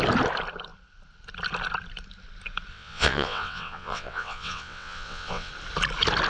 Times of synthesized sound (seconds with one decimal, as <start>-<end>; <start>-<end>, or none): 2.7-5.5